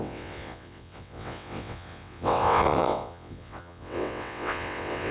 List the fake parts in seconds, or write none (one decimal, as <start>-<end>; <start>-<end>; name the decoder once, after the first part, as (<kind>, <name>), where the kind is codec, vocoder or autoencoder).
0.0-5.1 (vocoder, WaveNeXt)